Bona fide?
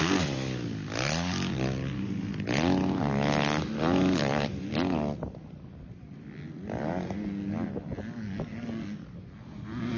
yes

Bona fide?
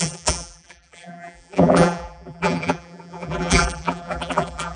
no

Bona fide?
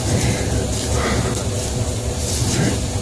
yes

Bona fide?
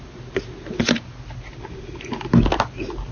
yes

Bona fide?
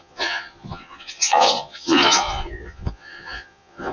no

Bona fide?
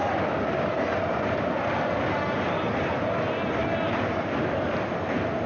yes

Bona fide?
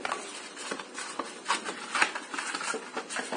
yes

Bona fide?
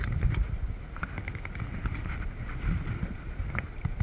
yes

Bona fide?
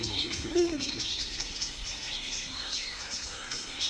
no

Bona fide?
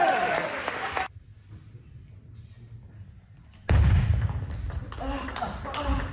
yes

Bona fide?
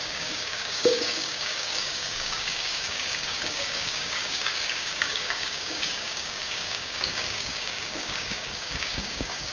no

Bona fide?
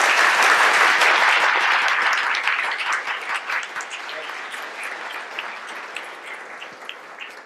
yes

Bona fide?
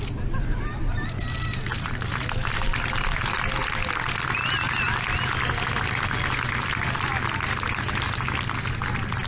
yes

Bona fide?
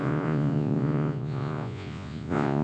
no